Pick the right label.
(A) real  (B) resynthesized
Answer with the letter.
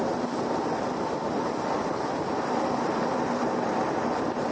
A